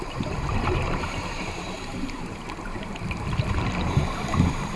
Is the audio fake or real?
fake